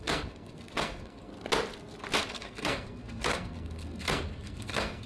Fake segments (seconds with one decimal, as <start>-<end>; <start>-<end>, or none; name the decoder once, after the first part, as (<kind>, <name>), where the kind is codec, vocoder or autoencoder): 0.0-1.3 (codec, SNAC); 2.3-5.1